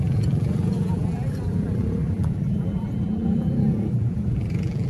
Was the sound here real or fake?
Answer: fake